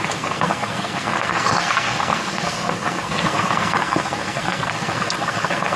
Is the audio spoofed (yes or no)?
yes